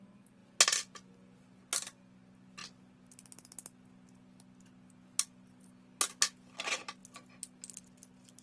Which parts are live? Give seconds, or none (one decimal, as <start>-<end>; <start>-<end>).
0.0-8.4